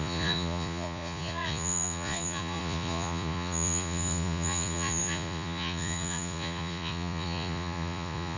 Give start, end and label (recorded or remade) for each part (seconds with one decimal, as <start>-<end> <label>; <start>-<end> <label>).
0.0-8.4 remade